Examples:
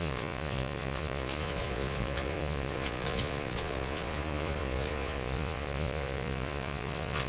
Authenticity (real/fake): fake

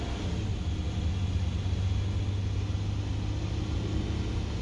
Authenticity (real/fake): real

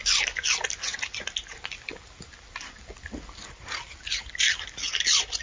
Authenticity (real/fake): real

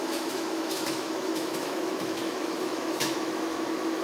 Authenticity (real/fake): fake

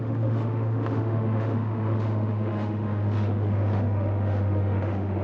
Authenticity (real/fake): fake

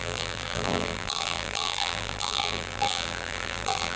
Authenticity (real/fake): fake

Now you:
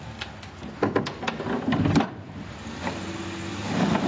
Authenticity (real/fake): real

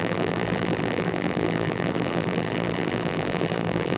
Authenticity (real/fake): fake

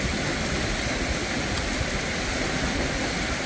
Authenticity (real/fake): real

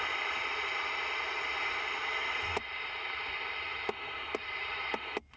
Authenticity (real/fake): real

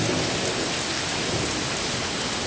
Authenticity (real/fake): real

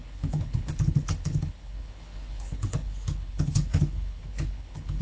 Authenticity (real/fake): fake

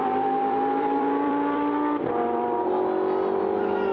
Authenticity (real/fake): fake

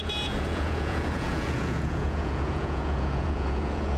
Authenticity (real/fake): fake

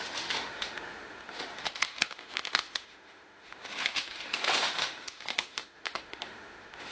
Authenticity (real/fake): fake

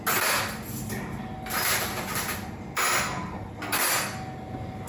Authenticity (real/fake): real